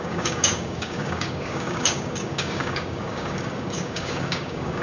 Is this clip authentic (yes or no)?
no